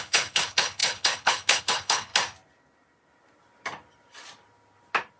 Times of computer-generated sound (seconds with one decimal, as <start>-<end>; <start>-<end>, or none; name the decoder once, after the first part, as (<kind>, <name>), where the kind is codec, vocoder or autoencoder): 0.0-2.1 (codec, HILCodec)